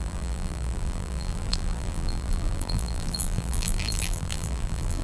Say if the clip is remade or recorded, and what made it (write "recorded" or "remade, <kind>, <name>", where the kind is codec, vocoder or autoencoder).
remade, vocoder, BigVGAN v2